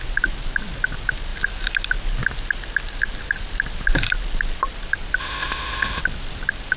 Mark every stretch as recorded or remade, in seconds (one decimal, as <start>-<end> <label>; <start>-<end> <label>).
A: 0.0-5.2 recorded; 5.2-6.0 remade; 6.0-6.8 recorded